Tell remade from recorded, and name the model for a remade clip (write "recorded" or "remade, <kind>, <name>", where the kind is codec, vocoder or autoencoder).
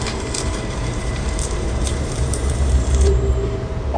remade, vocoder, BigVGAN v2